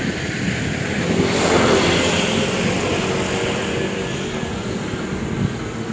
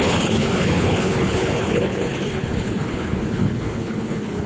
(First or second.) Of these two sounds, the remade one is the second